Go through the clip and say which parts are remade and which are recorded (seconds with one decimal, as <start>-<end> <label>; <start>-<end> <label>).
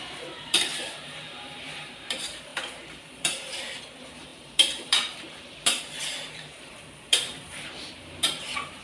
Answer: 0.0-8.8 remade